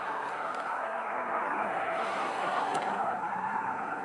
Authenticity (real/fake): fake